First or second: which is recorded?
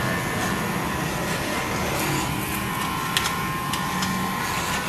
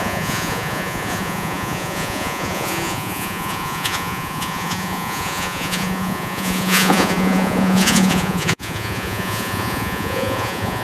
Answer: first